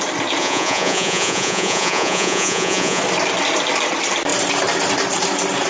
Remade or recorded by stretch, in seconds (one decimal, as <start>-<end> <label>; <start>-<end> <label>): 0.0-0.4 recorded; 0.4-3.0 remade; 3.0-5.7 recorded